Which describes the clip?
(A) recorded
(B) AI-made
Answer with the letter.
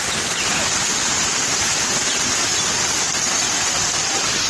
A